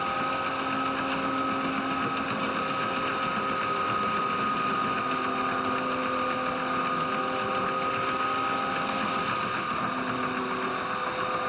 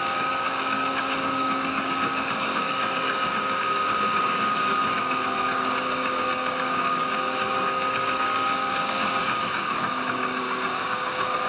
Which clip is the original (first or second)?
first